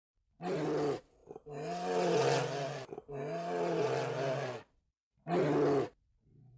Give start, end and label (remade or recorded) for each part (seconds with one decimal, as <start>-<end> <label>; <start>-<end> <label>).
0.0-6.6 recorded